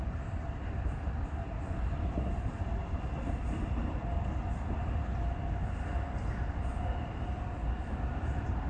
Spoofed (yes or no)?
no